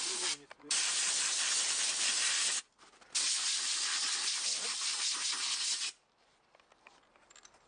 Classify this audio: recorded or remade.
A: remade